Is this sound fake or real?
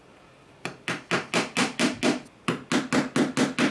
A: real